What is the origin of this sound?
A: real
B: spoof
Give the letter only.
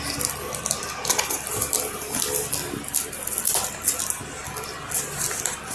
A